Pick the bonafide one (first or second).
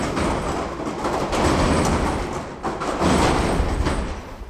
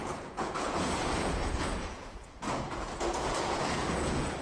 first